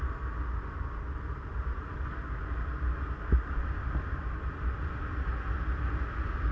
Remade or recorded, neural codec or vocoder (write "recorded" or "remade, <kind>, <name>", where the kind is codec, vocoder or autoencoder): recorded